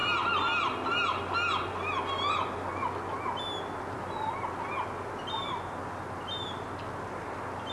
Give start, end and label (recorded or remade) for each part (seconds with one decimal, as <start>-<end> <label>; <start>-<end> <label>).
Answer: 0.0-7.7 recorded